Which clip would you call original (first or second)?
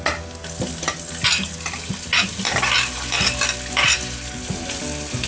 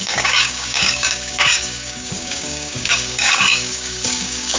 first